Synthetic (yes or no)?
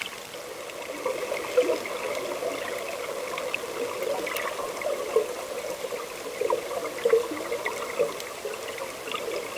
no